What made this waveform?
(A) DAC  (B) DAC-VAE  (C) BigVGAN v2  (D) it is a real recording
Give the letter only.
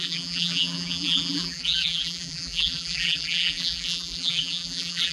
C